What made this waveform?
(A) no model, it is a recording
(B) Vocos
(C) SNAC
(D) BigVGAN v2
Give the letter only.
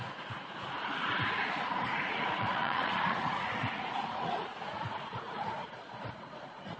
B